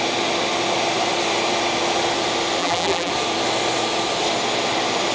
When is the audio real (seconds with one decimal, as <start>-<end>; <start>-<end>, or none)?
0.0-2.6; 3.1-5.1